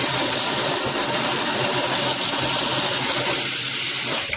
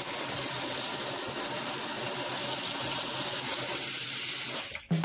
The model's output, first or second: first